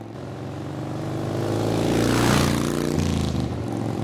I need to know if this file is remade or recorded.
recorded